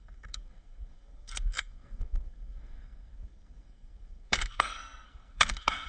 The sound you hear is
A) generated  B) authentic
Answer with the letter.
A